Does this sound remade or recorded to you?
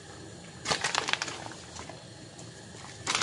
recorded